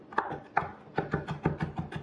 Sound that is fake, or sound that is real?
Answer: real